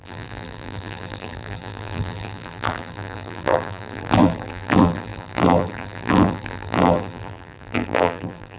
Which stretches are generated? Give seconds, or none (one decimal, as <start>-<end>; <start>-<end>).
0.0-8.6